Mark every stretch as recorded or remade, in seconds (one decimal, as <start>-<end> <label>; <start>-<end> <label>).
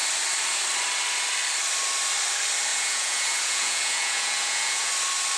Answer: 0.0-2.7 recorded; 2.7-4.9 remade; 4.9-5.4 recorded